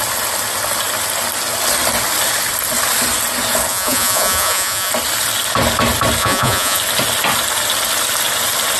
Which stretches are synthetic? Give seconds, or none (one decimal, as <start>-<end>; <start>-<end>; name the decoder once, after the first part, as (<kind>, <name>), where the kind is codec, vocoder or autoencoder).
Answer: 3.7-4.9 (vocoder, Vocos); 6.2-6.8